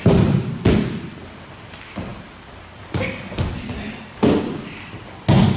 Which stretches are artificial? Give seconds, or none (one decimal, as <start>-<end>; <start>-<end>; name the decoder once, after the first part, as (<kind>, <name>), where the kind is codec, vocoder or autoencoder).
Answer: none